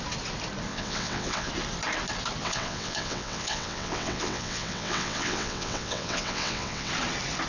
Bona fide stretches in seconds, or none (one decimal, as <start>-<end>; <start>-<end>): 0.0-0.7; 1.5-2.4; 6.9-7.5